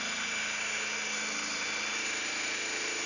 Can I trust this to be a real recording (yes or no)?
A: yes